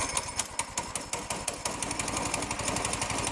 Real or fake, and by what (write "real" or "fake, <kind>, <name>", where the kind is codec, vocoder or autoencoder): real